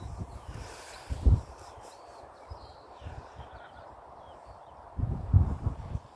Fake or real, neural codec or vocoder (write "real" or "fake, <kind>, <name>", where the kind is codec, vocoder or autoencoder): fake, vocoder, BigVGAN v2